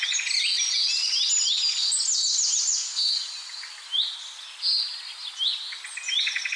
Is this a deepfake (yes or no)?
no